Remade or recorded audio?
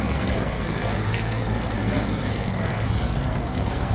remade